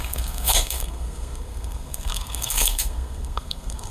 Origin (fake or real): fake